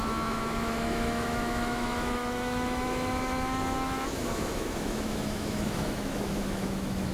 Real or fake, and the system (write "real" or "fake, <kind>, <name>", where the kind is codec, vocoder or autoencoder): fake, autoencoder, DAC-VAE